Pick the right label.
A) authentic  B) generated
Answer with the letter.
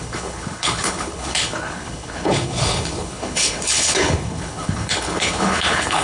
B